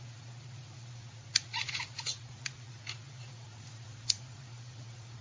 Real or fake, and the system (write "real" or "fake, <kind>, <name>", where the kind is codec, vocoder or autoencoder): fake, vocoder, Vocos